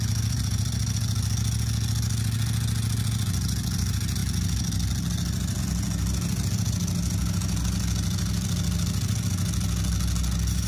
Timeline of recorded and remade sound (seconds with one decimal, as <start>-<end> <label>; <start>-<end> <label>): 0.0-10.7 recorded

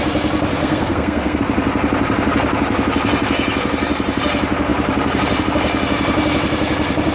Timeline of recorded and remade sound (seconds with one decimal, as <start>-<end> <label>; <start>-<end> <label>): 0.0-0.6 recorded; 0.6-1.4 remade; 1.4-7.1 recorded

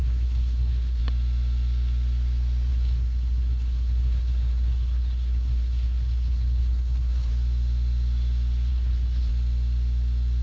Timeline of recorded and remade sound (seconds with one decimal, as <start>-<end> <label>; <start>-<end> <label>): 0.0-1.0 remade; 1.0-2.7 recorded; 2.7-7.3 remade; 7.3-8.7 recorded; 8.7-9.3 remade; 9.3-10.4 recorded